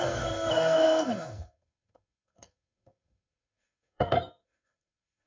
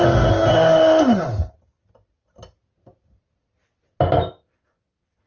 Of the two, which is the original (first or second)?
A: second